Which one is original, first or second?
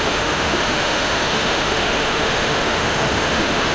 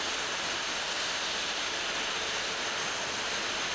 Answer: second